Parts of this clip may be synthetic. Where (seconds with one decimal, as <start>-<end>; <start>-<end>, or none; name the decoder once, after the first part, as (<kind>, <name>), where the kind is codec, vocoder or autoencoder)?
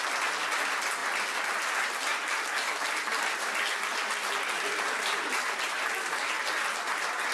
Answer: none